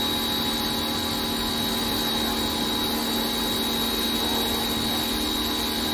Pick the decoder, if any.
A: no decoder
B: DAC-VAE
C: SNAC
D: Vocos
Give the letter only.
A